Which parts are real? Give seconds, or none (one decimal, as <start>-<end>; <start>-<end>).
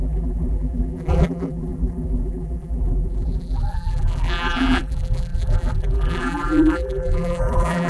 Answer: none